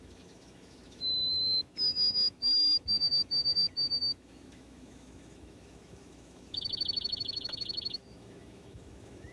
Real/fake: fake